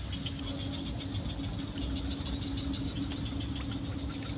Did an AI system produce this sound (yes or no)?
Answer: no